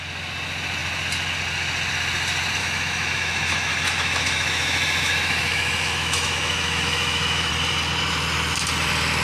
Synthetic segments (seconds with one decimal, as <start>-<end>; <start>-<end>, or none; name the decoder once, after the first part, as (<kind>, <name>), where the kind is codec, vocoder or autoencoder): 2.6-7.5 (autoencoder, DAC-VAE)